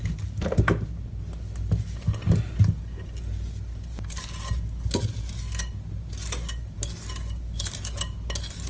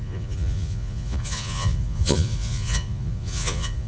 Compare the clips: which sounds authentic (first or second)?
first